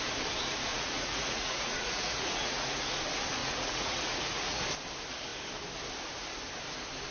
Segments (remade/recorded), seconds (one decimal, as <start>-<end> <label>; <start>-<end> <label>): 0.0-0.7 recorded; 0.7-3.0 remade; 3.0-3.4 recorded; 3.4-4.6 remade; 4.6-7.1 recorded